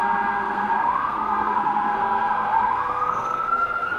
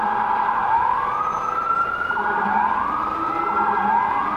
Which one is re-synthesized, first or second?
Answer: first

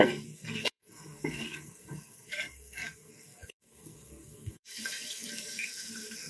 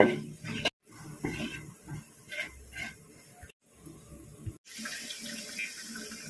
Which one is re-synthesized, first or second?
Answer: first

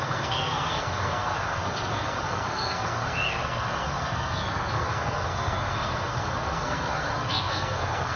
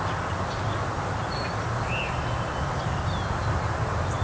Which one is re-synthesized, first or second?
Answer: first